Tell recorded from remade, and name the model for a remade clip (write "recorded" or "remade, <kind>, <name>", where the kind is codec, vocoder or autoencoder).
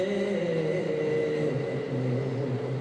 recorded